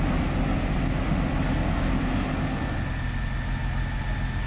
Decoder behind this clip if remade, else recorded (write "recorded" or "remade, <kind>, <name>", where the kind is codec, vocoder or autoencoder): recorded